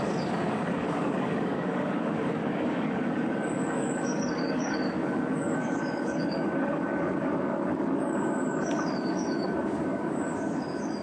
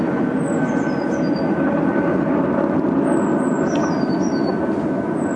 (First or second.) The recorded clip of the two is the second